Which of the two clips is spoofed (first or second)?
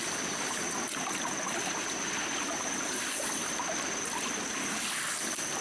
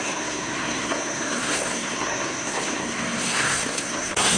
second